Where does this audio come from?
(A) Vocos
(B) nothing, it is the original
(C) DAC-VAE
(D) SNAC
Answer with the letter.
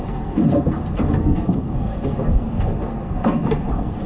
D